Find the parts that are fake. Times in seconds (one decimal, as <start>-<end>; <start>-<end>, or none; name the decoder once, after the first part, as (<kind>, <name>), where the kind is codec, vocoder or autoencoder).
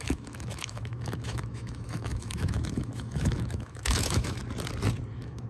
0.0-4.4 (autoencoder, DAC-VAE); 5.1-5.5